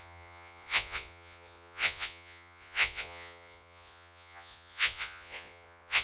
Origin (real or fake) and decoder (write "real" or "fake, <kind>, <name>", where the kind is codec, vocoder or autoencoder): fake, vocoder, Vocos